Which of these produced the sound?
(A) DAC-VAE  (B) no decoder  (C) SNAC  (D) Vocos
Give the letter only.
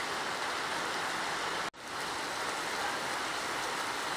B